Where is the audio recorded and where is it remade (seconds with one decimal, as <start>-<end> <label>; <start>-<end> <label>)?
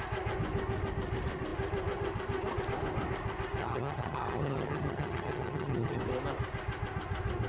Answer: 0.0-3.6 recorded; 3.6-6.0 remade; 6.0-7.5 recorded